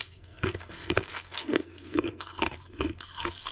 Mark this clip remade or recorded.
remade